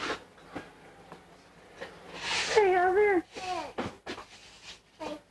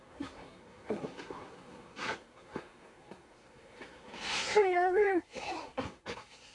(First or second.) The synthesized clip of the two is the second